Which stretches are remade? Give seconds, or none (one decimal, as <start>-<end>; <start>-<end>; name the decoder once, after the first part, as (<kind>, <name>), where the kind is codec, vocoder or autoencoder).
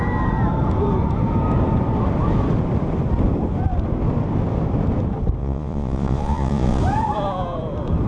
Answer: 5.4-6.8 (vocoder, Vocos)